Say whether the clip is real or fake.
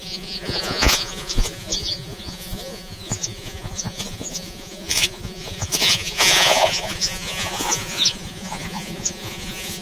fake